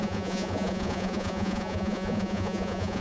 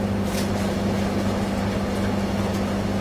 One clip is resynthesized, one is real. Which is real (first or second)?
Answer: second